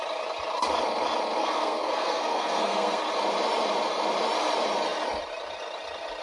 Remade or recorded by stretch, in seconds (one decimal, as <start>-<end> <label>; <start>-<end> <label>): 0.0-1.4 recorded; 1.4-3.0 remade; 3.0-6.2 recorded